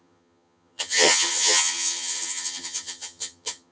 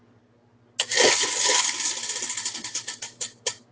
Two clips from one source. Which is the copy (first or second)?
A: first